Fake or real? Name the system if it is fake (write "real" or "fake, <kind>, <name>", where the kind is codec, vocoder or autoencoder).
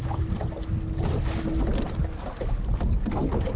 real